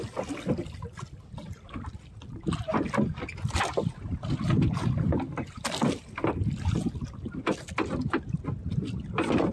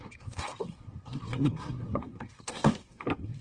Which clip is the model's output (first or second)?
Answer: second